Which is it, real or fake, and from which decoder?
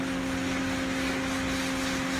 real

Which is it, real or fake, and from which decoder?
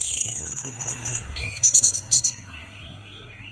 fake, codec, SNAC